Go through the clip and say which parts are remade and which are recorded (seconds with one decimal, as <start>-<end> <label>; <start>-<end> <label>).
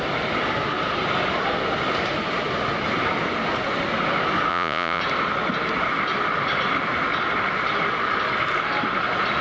0.0-4.5 recorded; 4.5-5.0 remade; 5.0-9.4 recorded